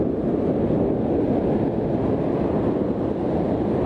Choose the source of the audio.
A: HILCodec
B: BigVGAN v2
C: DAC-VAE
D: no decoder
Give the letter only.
D